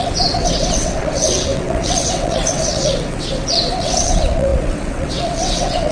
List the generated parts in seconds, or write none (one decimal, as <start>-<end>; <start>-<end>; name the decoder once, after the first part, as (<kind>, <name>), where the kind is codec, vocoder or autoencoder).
0.0-5.9 (vocoder, WaveNeXt)